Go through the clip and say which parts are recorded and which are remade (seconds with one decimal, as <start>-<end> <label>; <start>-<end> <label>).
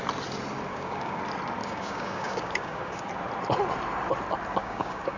0.0-0.7 recorded; 0.7-1.2 remade; 1.2-1.6 recorded; 1.6-3.1 remade; 3.1-4.6 recorded; 4.6-5.2 remade